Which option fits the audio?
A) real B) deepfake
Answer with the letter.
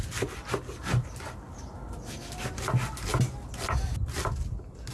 A